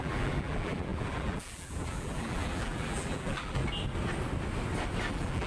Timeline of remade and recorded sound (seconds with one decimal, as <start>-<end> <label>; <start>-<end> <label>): 0.0-3.6 remade; 3.6-5.1 recorded; 5.1-5.5 remade